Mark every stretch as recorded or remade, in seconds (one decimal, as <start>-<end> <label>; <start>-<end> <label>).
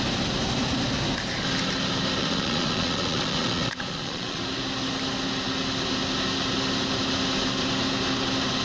0.0-2.2 recorded; 2.2-4.4 remade; 4.4-8.6 recorded